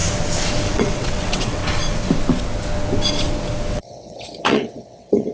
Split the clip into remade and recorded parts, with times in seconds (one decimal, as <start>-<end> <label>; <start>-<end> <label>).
0.0-0.7 recorded; 0.7-1.6 remade; 1.6-3.7 recorded; 3.7-5.3 remade